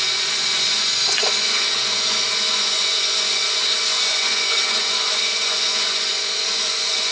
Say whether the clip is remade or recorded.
remade